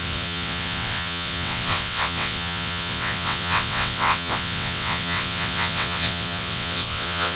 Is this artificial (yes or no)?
yes